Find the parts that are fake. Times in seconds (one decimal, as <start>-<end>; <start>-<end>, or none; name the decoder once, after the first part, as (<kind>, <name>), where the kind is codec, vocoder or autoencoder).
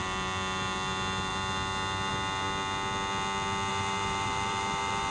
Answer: 3.7-5.1 (vocoder, BigVGAN v2)